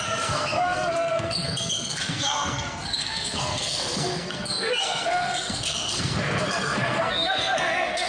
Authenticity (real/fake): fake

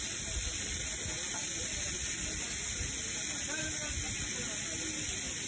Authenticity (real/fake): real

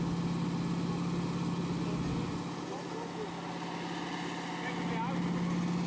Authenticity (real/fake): real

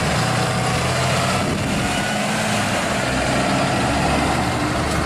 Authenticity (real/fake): real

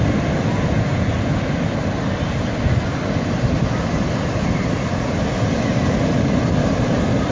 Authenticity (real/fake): real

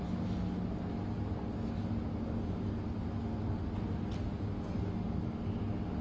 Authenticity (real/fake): real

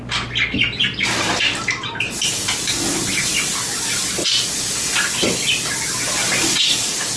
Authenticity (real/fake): real